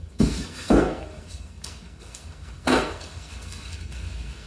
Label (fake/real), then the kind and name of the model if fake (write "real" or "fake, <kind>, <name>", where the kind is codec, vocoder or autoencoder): fake, codec, SNAC